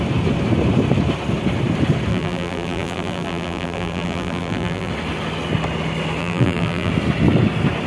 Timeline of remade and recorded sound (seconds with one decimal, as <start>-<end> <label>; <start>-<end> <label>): 0.0-2.1 recorded; 2.1-4.9 remade; 4.9-6.2 recorded; 6.2-6.9 remade; 6.9-7.9 recorded